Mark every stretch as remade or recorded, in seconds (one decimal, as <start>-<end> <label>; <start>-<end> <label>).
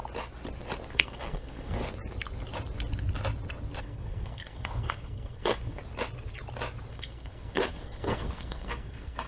0.0-0.9 recorded; 0.9-1.8 remade; 1.8-3.8 recorded; 3.8-5.8 remade; 5.8-6.9 recorded; 6.9-9.3 remade